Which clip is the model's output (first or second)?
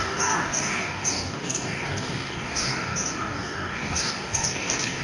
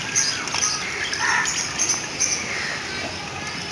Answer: first